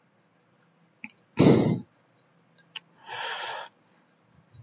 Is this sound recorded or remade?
recorded